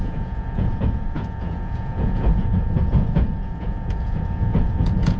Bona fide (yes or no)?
no